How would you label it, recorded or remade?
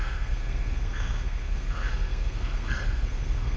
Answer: remade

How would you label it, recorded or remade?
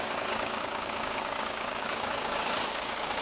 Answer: remade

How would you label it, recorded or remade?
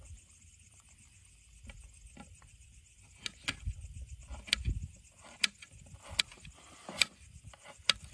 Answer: recorded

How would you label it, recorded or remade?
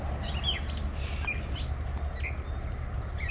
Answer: recorded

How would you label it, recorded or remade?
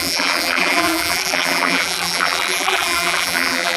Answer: remade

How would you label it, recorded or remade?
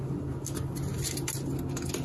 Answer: recorded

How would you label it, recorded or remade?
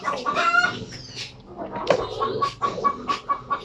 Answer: recorded